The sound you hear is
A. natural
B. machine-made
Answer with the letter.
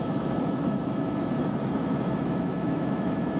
B